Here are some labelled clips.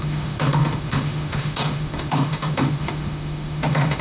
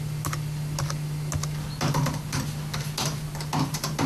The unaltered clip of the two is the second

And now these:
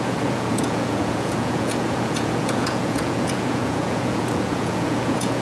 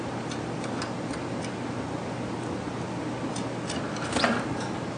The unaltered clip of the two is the second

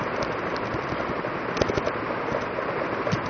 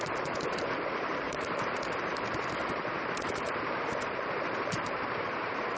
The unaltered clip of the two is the first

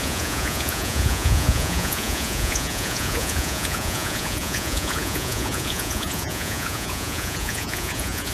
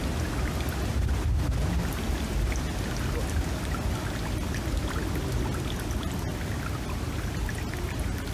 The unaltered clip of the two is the second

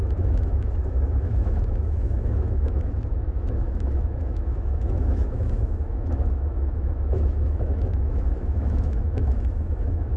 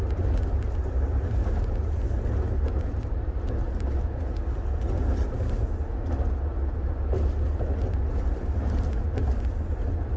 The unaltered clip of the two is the second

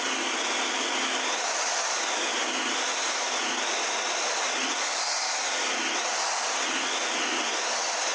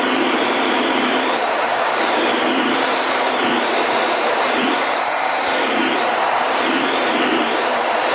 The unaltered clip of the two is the first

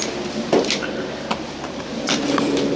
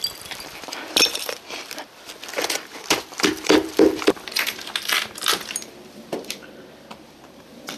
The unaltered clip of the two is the first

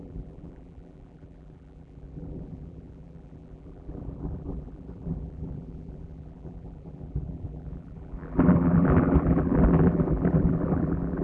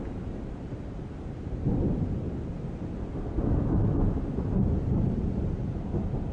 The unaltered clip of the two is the second